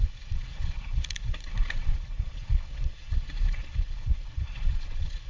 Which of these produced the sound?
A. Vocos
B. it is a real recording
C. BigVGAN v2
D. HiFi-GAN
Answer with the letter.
A